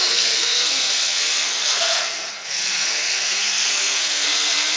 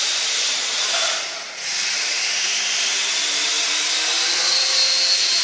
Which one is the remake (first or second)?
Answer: first